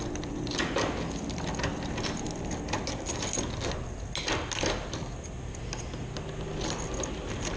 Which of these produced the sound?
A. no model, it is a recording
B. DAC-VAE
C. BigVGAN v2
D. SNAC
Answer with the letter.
A